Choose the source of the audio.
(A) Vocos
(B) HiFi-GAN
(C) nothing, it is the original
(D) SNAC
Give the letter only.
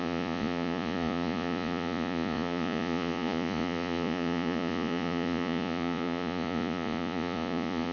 A